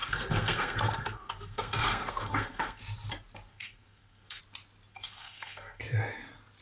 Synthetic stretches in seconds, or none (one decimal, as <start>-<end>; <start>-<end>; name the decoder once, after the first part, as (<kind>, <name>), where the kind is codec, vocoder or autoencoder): 0.0-2.8 (codec, SNAC); 3.5-4.4; 4.9-5.8